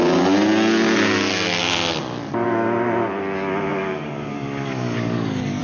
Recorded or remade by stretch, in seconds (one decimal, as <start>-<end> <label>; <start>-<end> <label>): 0.0-3.7 recorded; 3.7-5.6 remade